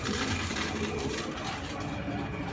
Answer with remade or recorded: remade